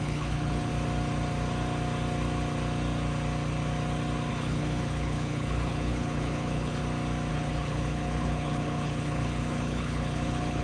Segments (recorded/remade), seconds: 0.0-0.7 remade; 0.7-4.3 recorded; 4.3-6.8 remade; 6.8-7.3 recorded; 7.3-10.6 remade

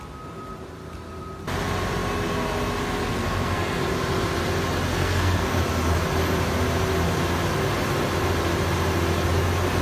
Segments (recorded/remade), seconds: 0.0-3.1 recorded; 3.1-3.8 remade; 3.8-4.9 recorded; 4.9-5.6 remade; 5.6-9.8 recorded

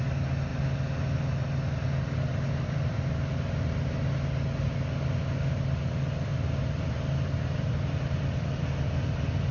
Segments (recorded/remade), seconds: 0.0-2.3 recorded; 2.3-3.2 remade; 3.2-6.3 recorded; 6.3-8.2 remade; 8.2-9.5 recorded

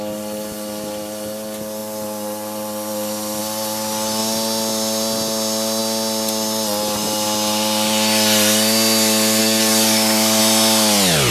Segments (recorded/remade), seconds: 0.0-9.4 recorded; 9.4-10.4 remade; 10.4-11.3 recorded

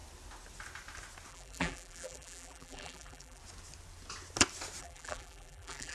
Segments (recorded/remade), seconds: 0.0-1.3 recorded; 1.3-3.4 remade; 3.4-4.8 recorded; 4.8-5.9 remade

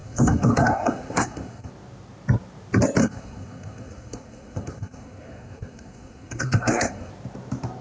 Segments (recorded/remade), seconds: 0.0-1.7 remade; 1.7-3.0 recorded; 3.0-7.1 remade; 7.1-7.8 recorded

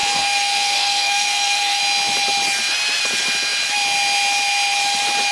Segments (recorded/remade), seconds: 0.0-1.8 remade; 1.8-5.3 recorded

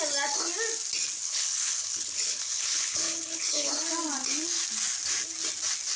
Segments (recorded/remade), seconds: 0.0-1.2 recorded; 1.2-3.7 remade; 3.7-6.0 recorded